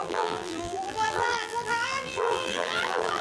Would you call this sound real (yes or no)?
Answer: no